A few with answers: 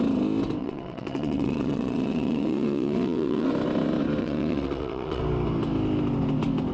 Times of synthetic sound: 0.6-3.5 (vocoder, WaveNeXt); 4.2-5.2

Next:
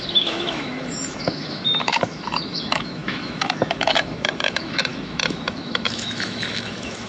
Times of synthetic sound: 0.0-7.1 (autoencoder, DAC-VAE)

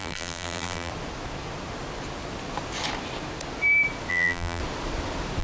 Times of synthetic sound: 0.0-0.9 (vocoder, BigVGAN v2); 4.1-4.6

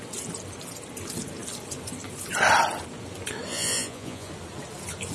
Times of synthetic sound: 3.5-4.3 (vocoder, Vocos)